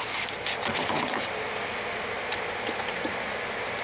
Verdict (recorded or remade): recorded